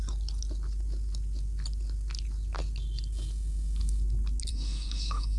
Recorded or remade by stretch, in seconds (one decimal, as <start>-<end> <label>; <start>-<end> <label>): 0.0-4.5 recorded; 4.5-5.4 remade